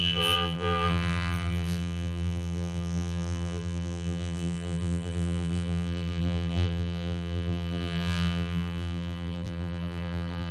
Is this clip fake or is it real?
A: fake